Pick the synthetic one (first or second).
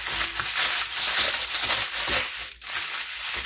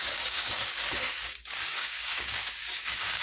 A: second